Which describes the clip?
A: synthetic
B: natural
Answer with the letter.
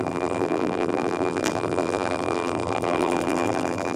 A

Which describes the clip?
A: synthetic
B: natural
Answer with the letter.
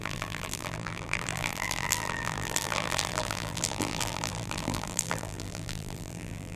A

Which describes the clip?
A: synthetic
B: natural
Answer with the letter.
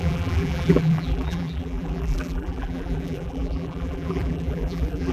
A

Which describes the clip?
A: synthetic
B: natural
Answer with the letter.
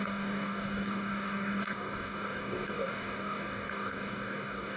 A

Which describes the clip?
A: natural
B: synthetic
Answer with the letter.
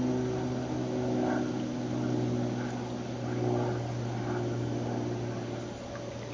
A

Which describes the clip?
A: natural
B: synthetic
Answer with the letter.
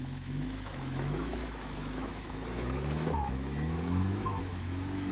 B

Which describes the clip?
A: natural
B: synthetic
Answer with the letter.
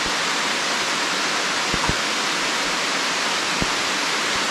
A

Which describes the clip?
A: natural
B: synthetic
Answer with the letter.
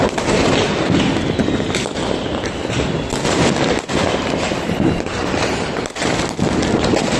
A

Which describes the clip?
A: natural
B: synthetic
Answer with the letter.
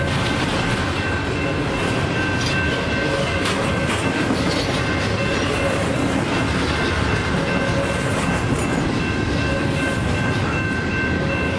A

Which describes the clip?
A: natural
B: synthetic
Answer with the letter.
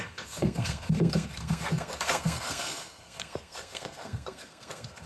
B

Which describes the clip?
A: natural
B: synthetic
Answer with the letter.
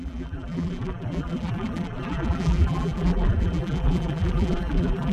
B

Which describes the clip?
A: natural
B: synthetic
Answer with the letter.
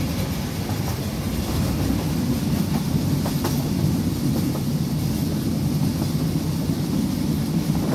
A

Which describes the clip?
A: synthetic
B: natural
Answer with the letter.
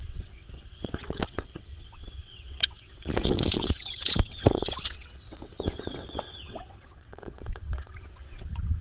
A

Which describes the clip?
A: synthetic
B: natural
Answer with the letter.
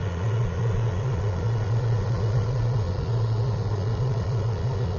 A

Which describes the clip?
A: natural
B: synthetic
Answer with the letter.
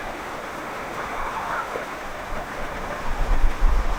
B